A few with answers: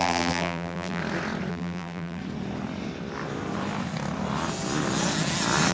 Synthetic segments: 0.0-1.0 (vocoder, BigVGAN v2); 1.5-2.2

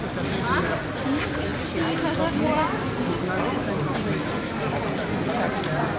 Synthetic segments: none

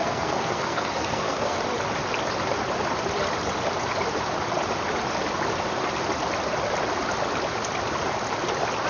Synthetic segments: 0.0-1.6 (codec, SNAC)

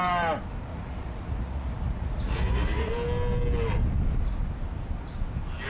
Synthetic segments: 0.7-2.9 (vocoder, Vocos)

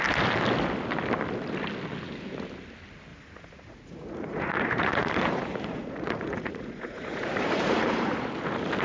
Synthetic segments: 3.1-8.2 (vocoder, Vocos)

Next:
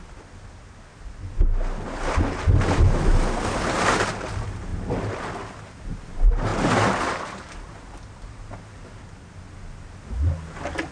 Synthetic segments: none